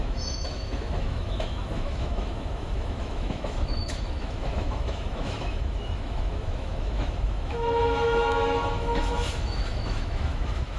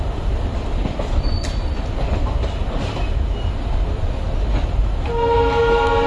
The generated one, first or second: first